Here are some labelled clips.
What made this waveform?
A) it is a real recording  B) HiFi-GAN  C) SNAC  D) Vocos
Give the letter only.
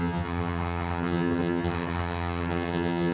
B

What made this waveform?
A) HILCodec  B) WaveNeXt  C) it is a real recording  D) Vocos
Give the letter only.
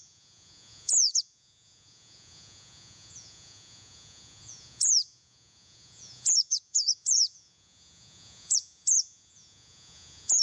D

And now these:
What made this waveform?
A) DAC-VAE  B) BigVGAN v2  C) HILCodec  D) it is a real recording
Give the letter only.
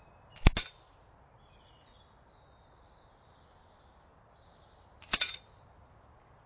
D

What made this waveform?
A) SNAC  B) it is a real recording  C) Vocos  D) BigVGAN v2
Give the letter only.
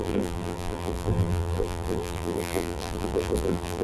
D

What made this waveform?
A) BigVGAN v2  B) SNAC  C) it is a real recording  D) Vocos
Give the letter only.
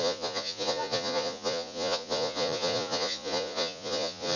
D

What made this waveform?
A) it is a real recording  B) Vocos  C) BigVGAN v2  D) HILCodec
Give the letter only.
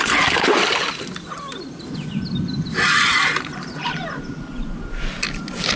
A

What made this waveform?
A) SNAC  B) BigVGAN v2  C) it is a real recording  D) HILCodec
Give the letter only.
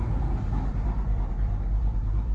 B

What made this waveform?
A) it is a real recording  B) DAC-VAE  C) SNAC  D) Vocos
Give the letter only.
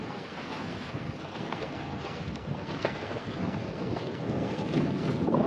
C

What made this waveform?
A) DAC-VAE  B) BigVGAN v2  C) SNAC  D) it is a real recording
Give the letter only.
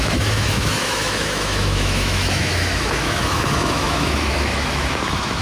A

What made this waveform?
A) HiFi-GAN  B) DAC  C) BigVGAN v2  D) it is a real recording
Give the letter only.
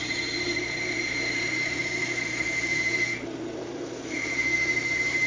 C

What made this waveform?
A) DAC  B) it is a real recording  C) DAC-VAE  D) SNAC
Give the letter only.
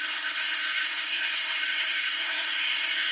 D